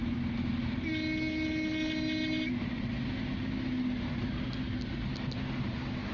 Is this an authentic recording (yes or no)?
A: yes